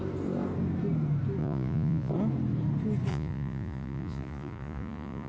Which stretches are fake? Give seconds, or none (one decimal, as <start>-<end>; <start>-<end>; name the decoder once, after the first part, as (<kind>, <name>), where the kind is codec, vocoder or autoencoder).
1.4-2.1 (vocoder, Vocos); 3.1-5.3